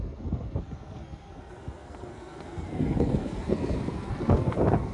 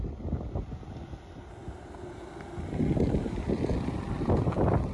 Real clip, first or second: second